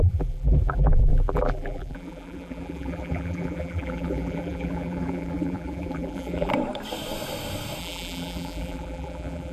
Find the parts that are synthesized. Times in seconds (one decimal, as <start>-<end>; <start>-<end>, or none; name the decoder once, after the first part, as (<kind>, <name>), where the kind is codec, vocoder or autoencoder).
0.0-6.5 (vocoder, BigVGAN v2); 7.8-9.5

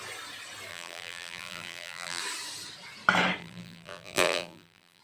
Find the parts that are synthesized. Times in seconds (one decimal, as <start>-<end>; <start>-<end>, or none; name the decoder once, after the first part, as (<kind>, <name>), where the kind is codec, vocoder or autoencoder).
0.7-2.2 (vocoder, BigVGAN v2); 3.4-5.0

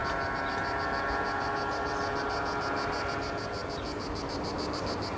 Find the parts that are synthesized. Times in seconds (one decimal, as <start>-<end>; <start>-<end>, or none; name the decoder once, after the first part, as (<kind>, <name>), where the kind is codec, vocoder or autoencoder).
none

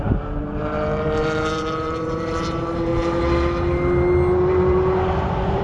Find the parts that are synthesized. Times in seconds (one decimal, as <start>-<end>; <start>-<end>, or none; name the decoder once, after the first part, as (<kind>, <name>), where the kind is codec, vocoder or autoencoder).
0.0-2.9 (vocoder, BigVGAN v2); 4.5-5.6

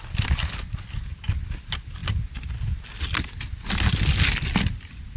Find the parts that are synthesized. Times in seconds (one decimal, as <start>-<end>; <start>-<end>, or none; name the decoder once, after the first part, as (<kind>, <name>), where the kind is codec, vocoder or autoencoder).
none